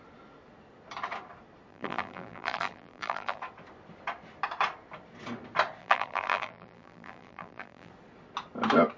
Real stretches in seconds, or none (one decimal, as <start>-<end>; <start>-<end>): 0.0-1.7; 3.4-5.8; 7.9-9.0